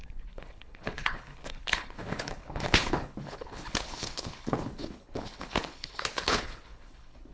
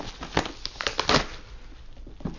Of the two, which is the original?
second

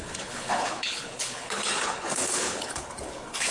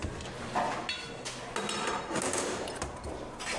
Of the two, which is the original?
second